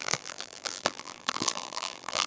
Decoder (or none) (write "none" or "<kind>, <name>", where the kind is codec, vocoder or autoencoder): vocoder, BigVGAN v2